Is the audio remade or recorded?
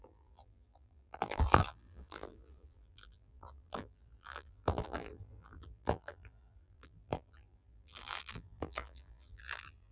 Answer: remade